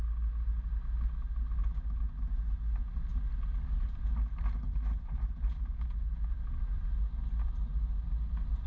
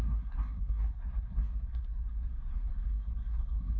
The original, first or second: first